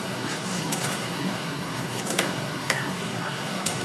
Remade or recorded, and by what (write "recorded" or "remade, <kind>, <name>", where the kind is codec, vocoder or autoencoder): remade, codec, SNAC